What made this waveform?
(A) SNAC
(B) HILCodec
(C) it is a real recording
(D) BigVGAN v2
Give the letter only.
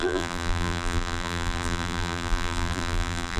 D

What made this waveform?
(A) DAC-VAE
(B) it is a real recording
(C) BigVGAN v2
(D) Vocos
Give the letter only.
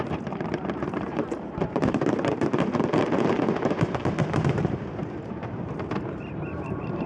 C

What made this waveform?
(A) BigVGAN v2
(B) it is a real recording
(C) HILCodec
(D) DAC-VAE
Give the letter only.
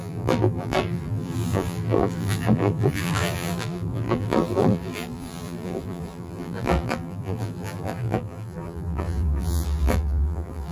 A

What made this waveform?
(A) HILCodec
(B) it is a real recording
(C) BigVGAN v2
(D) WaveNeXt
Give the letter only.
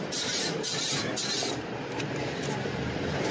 C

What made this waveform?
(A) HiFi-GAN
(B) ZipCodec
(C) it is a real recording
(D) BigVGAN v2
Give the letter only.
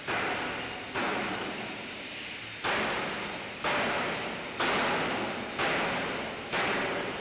C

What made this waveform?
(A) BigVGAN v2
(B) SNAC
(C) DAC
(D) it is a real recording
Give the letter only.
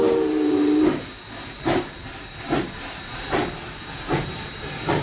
A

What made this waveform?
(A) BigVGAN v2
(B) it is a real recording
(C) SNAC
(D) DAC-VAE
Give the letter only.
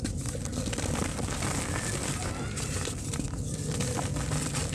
B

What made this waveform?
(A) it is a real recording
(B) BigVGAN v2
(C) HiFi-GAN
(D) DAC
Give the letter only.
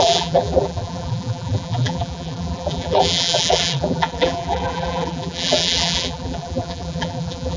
B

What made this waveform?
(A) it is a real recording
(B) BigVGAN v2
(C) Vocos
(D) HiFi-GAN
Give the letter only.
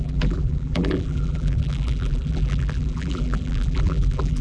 B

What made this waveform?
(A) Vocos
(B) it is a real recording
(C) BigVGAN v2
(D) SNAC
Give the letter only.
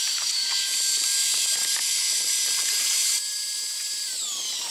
C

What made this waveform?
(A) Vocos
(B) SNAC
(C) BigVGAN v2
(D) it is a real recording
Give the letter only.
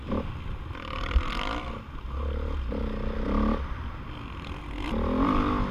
D